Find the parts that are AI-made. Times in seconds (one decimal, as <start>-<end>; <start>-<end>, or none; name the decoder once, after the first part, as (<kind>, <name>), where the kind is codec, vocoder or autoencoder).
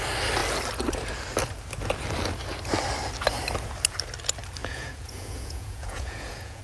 4.6-6.6 (vocoder, Vocos)